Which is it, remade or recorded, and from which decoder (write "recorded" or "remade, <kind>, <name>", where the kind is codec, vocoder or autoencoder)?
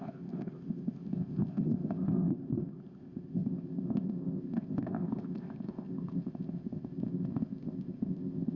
remade, codec, ZipCodec